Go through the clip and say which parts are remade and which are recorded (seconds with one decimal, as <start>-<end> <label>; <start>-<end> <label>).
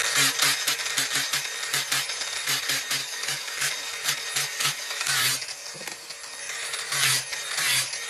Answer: 0.0-3.0 recorded; 3.0-3.7 remade; 3.7-4.5 recorded; 4.5-5.2 remade; 5.2-8.1 recorded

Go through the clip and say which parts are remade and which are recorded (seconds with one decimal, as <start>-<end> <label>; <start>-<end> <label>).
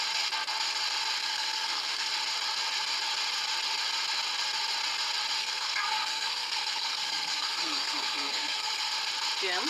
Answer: 0.0-1.2 recorded; 1.2-2.1 remade; 2.1-5.4 recorded; 5.4-8.9 remade; 8.9-9.7 recorded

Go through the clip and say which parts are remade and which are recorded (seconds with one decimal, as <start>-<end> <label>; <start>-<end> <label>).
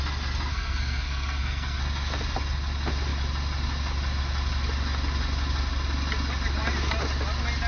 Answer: 0.0-0.5 recorded; 0.5-1.8 remade; 1.8-7.7 recorded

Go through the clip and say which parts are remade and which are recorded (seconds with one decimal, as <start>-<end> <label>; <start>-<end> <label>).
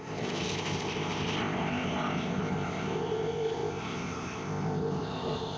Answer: 0.0-5.6 remade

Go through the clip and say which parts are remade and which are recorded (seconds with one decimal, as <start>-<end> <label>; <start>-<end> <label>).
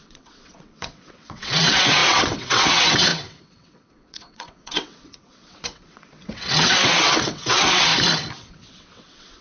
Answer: 0.0-7.9 remade; 7.9-8.5 recorded; 8.5-9.4 remade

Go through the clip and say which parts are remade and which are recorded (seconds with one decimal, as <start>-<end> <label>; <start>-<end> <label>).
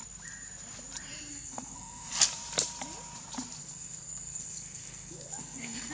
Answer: 0.0-1.3 recorded; 1.3-2.1 remade; 2.1-3.6 recorded; 3.6-5.9 remade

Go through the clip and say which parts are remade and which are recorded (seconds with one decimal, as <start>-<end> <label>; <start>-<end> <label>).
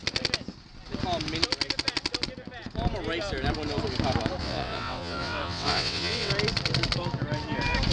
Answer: 0.0-4.4 recorded; 4.4-6.3 remade; 6.3-7.9 recorded